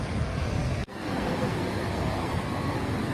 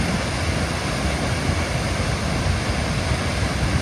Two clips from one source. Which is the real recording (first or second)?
second